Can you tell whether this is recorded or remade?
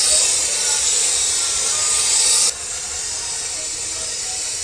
recorded